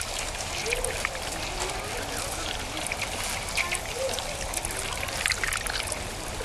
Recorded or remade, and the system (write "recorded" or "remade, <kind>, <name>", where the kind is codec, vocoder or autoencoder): recorded